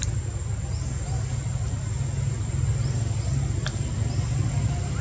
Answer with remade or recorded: recorded